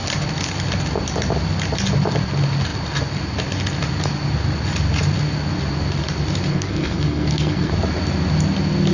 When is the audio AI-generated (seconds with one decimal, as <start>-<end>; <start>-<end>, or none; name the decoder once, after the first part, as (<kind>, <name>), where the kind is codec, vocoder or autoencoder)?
6.5-7.7 (codec, SNAC)